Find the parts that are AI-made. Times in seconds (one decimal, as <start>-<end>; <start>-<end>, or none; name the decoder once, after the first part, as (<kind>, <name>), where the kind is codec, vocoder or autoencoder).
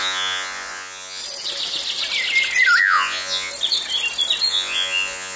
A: 0.0-1.2 (vocoder, Vocos); 2.8-3.5; 4.5-5.4